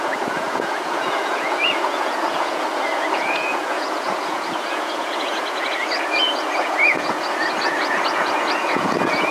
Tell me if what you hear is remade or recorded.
remade